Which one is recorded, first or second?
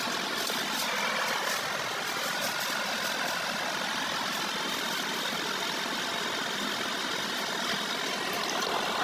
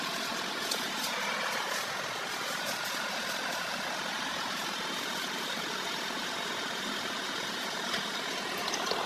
first